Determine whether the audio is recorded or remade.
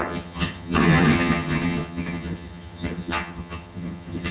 remade